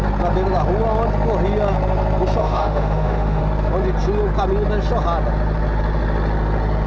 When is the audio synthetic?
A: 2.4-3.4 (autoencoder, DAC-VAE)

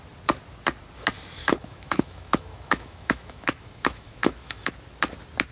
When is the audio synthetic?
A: 1.4-4.7 (autoencoder, DAC-VAE)

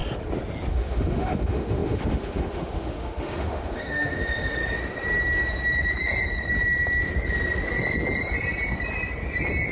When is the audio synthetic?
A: 0.7-4.6 (autoencoder, DAC-VAE)

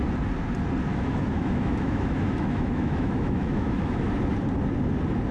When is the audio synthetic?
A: 0.9-4.1 (autoencoder, DAC-VAE)

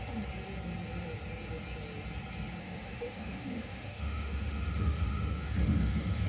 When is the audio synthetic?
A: 2.6-6.3 (autoencoder, DAC-VAE)

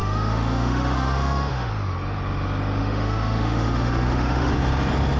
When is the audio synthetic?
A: 0.0-1.7 (autoencoder, DAC-VAE); 2.8-4.5